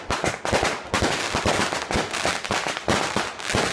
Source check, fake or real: real